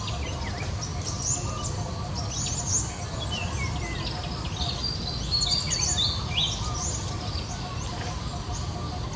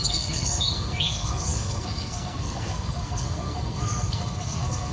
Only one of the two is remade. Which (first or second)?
second